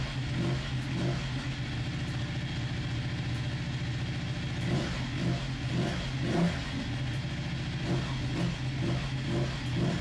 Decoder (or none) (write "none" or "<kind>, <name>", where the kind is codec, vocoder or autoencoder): none